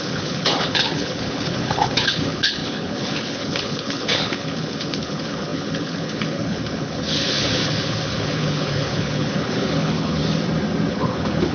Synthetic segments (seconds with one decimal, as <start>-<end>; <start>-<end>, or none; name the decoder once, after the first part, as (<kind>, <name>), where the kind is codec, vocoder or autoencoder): 0.0-10.2 (codec, HILCodec); 10.9-11.5